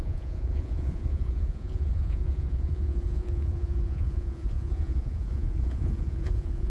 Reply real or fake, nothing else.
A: fake